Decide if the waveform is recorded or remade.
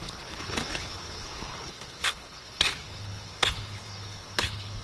remade